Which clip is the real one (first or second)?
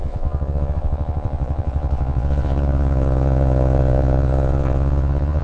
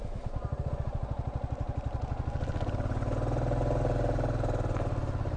second